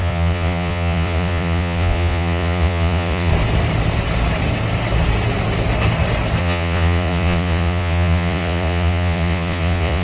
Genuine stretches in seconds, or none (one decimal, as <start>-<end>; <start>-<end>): 3.3-6.4